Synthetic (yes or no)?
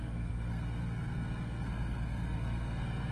yes